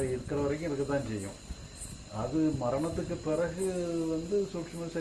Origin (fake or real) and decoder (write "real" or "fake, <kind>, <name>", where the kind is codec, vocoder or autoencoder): real